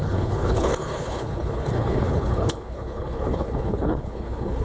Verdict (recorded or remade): remade